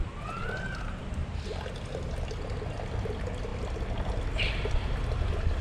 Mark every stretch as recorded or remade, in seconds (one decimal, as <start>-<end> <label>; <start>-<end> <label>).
0.0-5.6 recorded